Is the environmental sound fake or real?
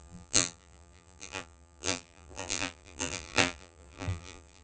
fake